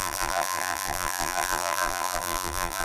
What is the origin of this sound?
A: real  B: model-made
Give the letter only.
B